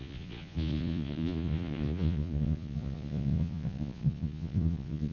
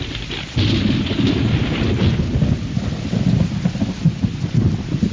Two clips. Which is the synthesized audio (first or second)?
first